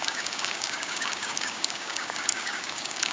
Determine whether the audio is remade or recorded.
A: remade